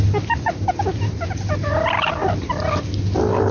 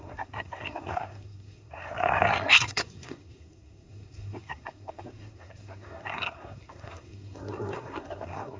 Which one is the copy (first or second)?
second